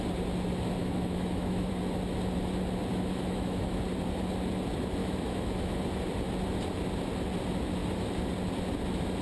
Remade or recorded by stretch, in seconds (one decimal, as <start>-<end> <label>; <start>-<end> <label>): 0.0-0.8 recorded; 0.8-1.7 remade; 1.7-2.9 recorded; 2.9-3.8 remade; 3.8-5.0 recorded; 5.0-5.8 remade; 5.8-9.2 recorded